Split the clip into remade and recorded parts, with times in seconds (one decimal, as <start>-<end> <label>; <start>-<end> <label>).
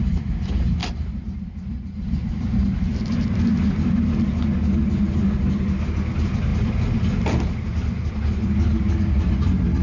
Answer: 0.0-0.8 recorded; 0.8-3.7 remade; 3.7-9.8 recorded